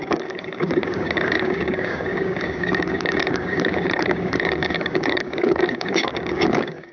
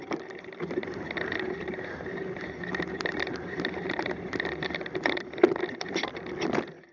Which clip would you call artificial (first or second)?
first